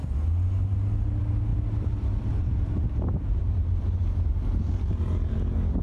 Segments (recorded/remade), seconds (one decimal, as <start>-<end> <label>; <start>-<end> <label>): 0.0-1.5 recorded; 1.5-5.0 remade; 5.0-5.8 recorded